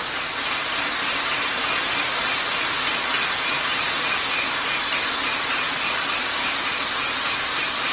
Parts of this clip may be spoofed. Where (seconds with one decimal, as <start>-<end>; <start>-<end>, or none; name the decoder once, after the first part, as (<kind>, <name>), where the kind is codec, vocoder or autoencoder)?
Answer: none